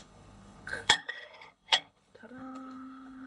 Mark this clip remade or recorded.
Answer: remade